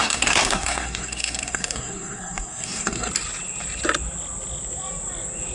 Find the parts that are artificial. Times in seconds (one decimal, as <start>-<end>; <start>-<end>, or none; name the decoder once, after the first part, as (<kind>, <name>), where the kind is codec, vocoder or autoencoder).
0.0-3.1 (codec, SNAC)